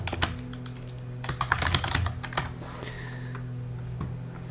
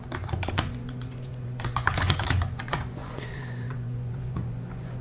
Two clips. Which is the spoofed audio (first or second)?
second